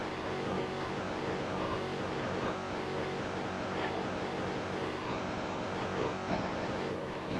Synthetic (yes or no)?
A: yes